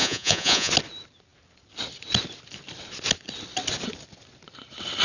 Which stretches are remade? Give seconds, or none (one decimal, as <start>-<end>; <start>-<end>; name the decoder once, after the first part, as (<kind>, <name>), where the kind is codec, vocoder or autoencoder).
0.0-0.7 (vocoder, Vocos)